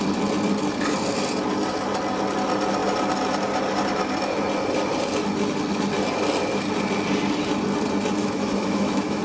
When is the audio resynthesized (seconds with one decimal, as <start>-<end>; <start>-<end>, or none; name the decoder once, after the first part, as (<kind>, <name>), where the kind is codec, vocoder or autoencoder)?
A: 8.2-9.2 (autoencoder, DAC-VAE)